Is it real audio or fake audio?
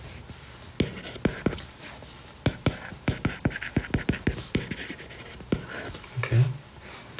real